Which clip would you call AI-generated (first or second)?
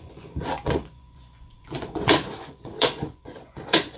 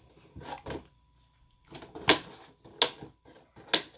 first